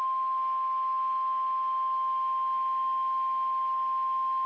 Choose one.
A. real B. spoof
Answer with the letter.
A